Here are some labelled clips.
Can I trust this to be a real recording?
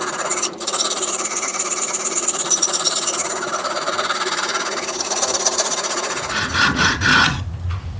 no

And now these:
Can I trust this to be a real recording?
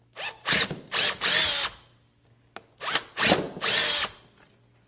yes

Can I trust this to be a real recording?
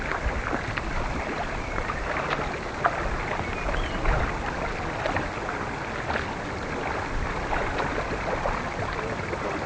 yes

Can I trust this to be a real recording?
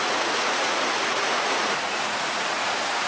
no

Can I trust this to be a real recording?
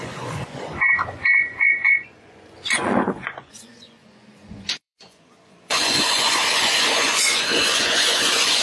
no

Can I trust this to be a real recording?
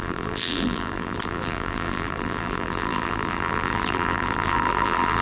no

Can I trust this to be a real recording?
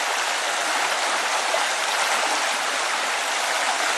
yes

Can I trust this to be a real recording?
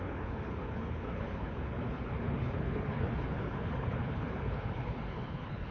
no